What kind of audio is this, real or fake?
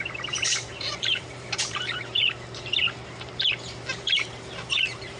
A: fake